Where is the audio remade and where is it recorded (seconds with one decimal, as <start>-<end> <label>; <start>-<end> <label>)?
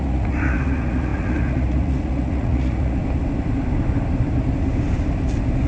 0.0-3.0 remade; 3.0-5.7 recorded